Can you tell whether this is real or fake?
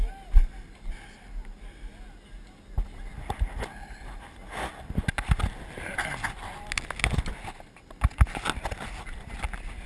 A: real